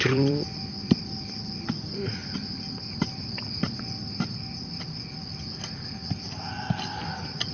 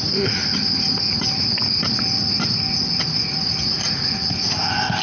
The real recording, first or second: second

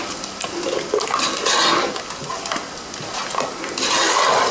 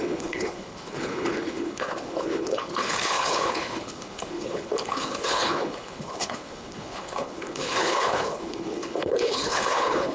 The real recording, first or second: first